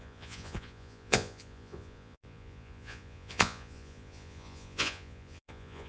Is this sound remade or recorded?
remade